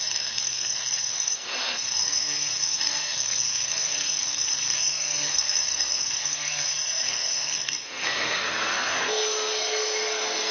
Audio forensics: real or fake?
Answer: fake